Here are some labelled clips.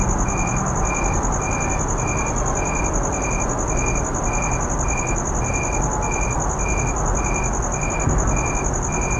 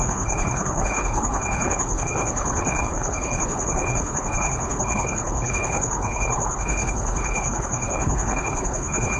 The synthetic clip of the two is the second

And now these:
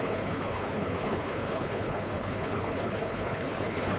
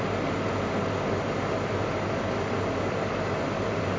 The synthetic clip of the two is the first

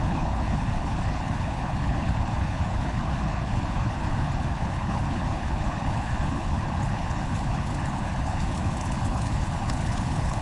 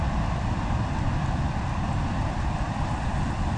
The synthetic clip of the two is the first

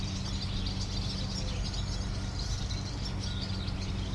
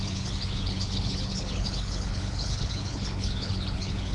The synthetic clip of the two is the second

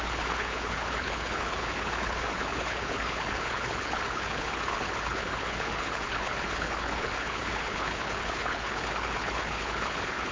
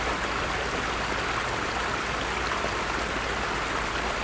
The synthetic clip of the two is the first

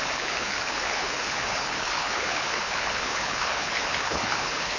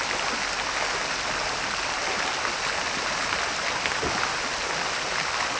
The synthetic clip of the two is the first